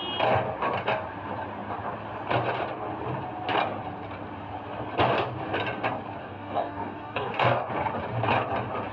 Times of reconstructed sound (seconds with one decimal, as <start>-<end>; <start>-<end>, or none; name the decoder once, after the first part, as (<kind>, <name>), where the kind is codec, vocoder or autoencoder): 6.2-7.7 (codec, DAC)